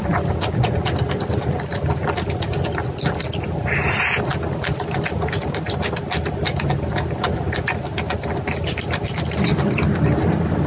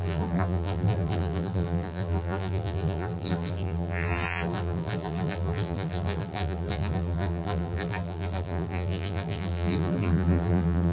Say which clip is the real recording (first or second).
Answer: first